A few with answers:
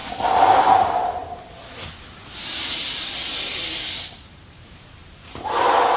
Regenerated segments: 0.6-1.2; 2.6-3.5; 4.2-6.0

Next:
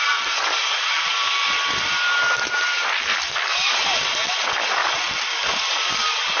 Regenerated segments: 0.6-2.5; 4.8-5.8